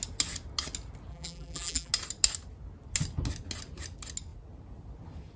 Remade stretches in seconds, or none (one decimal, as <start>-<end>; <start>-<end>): 1.1-1.9